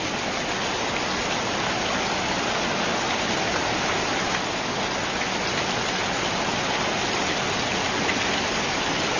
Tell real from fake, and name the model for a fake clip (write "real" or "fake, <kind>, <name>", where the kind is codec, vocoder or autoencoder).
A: real